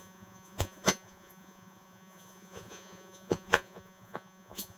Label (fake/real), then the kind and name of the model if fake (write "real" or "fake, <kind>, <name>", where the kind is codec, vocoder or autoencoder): fake, vocoder, Vocos